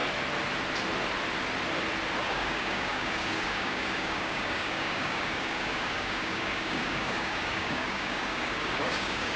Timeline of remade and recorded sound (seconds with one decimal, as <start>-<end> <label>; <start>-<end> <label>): 0.0-2.2 recorded; 2.2-9.4 remade